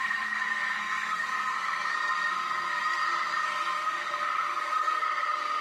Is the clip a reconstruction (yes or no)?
yes